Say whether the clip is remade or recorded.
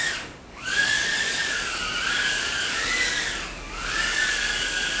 remade